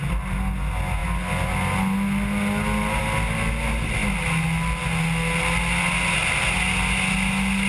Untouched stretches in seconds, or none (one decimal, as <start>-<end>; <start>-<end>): 0.0-7.7